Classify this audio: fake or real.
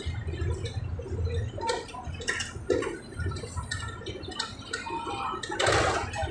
real